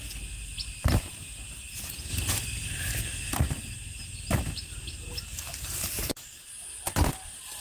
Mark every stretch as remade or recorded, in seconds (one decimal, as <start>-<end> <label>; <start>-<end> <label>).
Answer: 0.0-0.5 recorded; 0.5-1.2 remade; 1.2-7.6 recorded